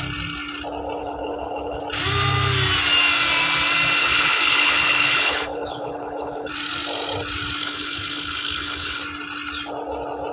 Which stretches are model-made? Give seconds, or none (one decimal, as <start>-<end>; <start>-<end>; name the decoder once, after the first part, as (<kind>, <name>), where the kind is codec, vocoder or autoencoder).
1.0-1.8 (codec, HILCodec); 4.0-6.5; 7.6-9.0